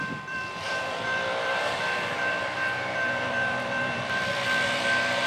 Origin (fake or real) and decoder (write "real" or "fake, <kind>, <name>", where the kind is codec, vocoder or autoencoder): fake, vocoder, BigVGAN v2